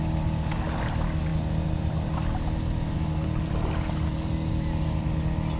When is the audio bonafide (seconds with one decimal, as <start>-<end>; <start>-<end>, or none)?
0.0-5.6